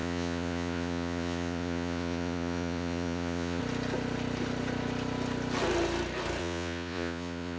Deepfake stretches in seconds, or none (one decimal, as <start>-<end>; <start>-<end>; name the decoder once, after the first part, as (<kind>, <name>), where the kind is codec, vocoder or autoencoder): 0.0-3.6 (vocoder, Vocos); 6.4-7.6